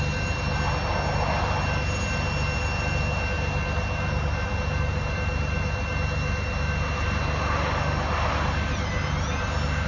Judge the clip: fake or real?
real